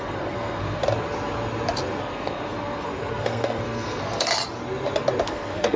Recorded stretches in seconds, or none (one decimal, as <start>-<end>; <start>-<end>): 0.8-2.0; 4.3-5.2

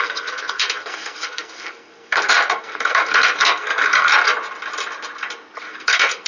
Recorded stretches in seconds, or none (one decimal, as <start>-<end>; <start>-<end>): 4.1-5.7

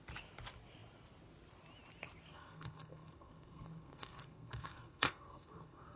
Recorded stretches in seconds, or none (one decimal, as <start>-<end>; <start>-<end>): 0.0-2.3

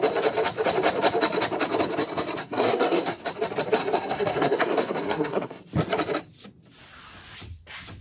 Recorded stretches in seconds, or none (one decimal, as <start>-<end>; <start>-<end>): 0.0-2.4; 3.2-3.8; 5.6-8.0

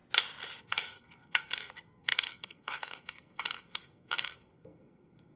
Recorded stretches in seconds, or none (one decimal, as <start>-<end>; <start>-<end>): 0.0-0.6

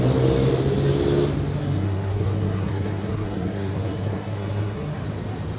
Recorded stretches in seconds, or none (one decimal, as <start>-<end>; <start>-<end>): 0.0-1.6; 5.0-5.6